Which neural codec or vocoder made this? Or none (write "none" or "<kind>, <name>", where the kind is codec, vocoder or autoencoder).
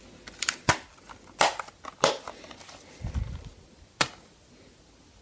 none